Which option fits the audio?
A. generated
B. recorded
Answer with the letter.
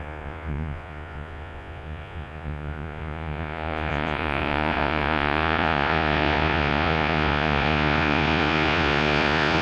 A